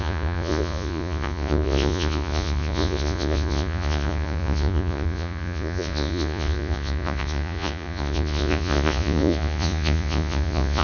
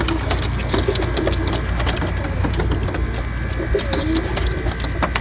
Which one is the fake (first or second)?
first